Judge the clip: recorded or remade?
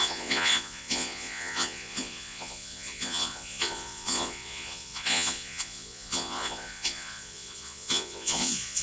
remade